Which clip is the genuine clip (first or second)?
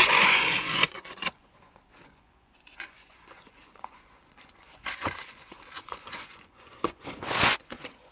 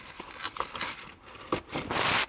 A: second